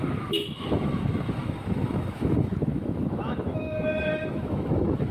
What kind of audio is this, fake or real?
fake